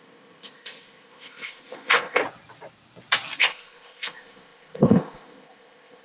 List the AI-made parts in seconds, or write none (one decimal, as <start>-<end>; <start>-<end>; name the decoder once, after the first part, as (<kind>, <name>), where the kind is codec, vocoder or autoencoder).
0.0-2.2 (codec, ZipCodec); 3.4-6.0